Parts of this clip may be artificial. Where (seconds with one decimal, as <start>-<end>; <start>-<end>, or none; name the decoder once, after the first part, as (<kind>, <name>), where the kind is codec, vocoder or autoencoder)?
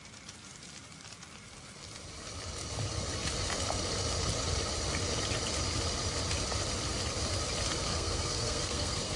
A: 7.9-9.2 (codec, SNAC)